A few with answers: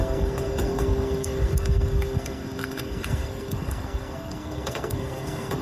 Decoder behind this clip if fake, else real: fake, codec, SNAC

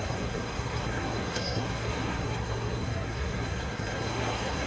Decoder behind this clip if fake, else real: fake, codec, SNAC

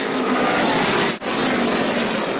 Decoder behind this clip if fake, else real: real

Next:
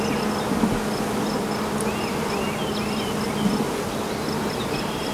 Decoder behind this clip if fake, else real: real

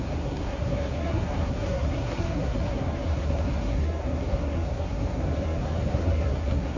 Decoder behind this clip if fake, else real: fake, codec, SNAC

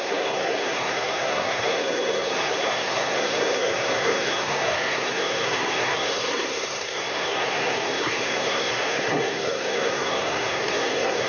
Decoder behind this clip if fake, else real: fake, codec, SNAC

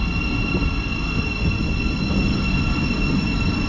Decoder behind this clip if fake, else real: real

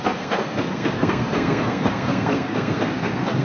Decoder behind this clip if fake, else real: fake, codec, SNAC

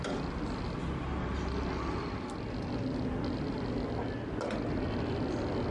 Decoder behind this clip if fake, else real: real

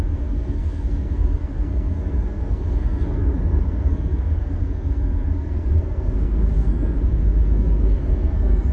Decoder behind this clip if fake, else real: fake, codec, SNAC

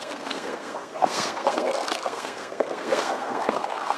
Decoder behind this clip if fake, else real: fake, codec, SNAC